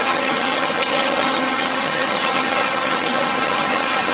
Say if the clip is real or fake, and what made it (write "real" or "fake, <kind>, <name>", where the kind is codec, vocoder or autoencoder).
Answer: fake, vocoder, HiFi-GAN